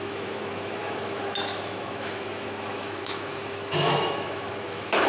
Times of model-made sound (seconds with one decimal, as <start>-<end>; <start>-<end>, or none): 0.0-5.1